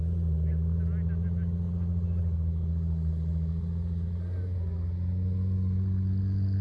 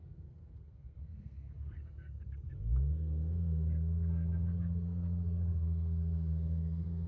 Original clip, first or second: first